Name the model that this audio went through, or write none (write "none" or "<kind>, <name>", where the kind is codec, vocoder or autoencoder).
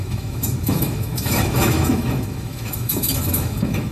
autoencoder, DAC-VAE